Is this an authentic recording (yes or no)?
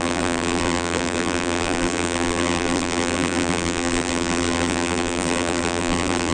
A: no